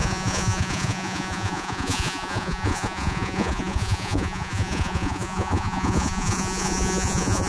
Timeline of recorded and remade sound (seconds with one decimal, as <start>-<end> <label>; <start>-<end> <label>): 0.0-7.5 remade